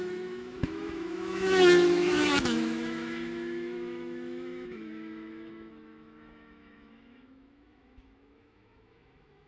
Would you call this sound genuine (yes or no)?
no